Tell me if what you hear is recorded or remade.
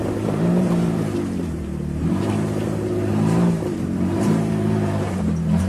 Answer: remade